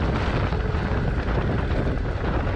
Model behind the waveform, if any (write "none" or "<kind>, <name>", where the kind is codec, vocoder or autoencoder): none